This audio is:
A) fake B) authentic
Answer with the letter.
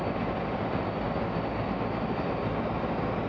B